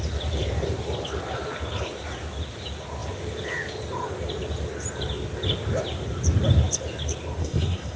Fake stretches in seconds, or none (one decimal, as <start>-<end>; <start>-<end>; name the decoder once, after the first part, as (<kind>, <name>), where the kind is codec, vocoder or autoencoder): 7.4-8.0 (codec, SNAC)